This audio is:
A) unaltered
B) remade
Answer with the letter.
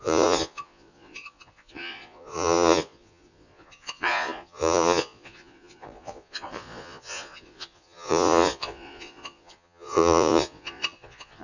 B